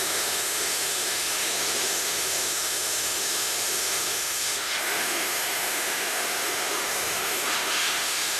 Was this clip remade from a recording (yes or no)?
yes